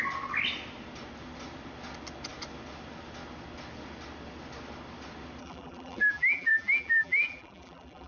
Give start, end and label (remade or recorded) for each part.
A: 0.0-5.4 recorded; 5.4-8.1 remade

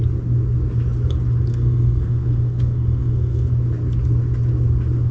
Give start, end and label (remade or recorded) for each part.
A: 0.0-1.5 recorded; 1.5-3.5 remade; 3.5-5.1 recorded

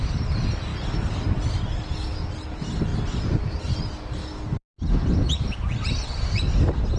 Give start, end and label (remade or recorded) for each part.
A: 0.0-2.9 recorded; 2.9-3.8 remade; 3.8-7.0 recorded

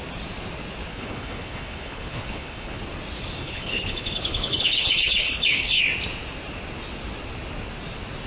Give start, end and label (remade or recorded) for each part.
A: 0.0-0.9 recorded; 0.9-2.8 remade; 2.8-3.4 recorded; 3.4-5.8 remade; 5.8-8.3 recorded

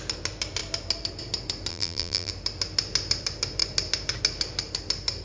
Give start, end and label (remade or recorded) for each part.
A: 0.0-1.7 recorded; 1.7-2.3 remade; 2.3-5.2 recorded